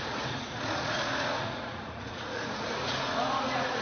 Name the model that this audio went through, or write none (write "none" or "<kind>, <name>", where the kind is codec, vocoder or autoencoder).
vocoder, Vocos